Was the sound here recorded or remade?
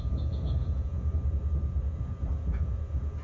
remade